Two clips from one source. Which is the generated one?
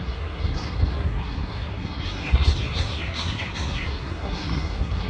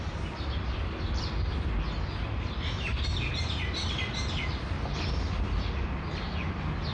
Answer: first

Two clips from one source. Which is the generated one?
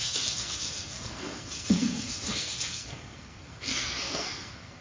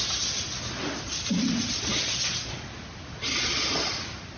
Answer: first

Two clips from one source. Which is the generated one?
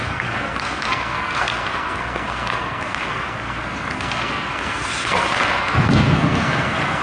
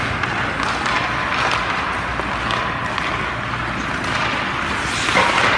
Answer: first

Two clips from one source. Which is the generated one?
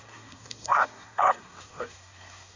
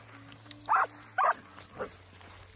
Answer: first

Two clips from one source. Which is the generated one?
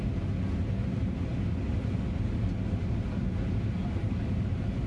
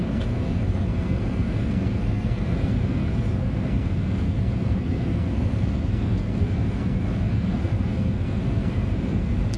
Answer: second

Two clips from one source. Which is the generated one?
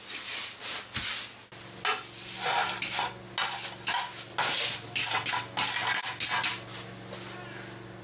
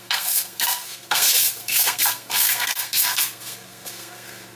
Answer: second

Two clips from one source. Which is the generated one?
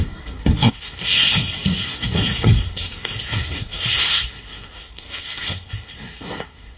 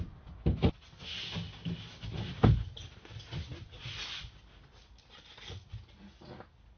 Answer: first